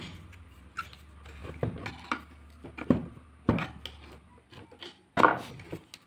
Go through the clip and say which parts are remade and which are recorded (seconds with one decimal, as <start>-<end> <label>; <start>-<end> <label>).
0.0-6.1 recorded